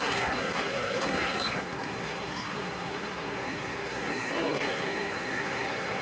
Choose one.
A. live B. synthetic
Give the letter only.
B